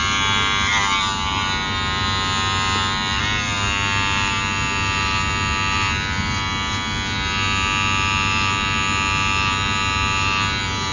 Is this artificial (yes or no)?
no